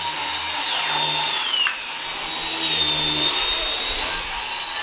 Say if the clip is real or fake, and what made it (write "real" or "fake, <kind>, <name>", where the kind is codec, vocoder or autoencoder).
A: real